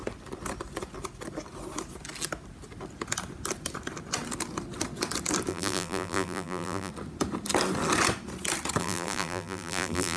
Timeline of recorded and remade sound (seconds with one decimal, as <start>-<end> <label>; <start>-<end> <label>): 0.0-5.5 recorded; 5.5-6.9 remade; 6.9-8.8 recorded; 8.8-10.2 remade